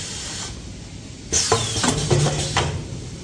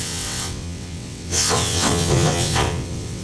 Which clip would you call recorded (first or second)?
first